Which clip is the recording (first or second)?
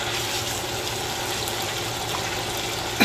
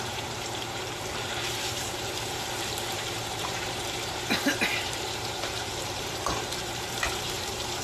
first